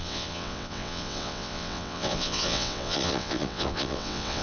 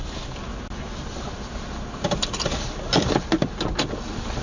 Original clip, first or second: second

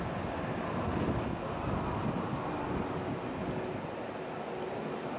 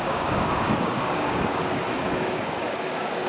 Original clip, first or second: first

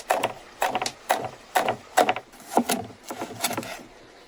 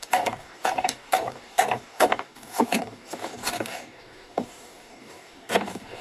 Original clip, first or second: first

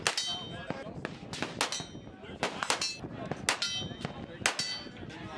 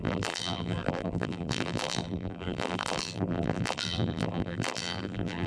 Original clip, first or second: first